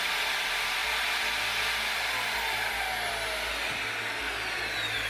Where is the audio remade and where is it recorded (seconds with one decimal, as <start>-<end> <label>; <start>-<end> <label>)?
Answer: 0.0-5.1 recorded